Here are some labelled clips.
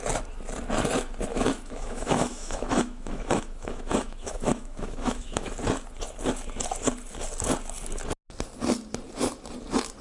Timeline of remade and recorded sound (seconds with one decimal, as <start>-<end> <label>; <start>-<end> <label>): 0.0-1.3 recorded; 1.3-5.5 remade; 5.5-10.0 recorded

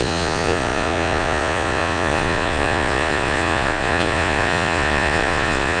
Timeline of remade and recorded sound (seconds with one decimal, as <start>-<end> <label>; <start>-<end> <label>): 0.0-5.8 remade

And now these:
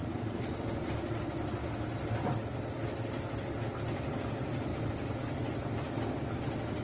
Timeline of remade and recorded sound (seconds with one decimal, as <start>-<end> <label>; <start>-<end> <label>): 0.0-0.9 remade; 0.9-1.6 recorded; 1.6-2.4 remade; 2.4-4.7 recorded; 4.7-5.2 remade; 5.2-6.8 recorded